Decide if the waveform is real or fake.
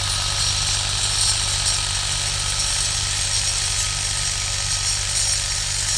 real